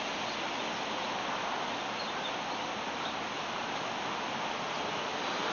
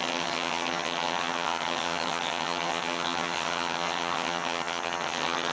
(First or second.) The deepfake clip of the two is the second